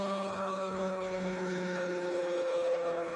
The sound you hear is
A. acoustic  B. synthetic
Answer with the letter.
B